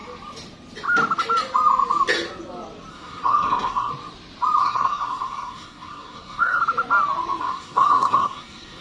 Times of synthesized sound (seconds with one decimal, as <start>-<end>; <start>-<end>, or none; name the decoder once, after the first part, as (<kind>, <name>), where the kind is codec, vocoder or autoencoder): 2.9-3.9 (codec, SNAC); 4.6-6.6; 7.4-8.8